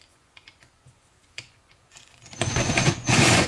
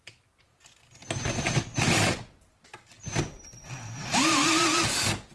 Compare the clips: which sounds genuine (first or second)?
second